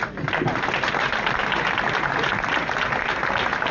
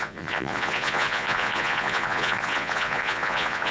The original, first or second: first